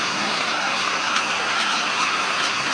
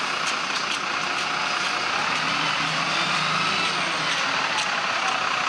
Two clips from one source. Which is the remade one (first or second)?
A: first